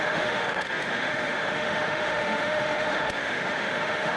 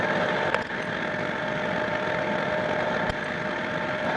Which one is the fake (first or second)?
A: first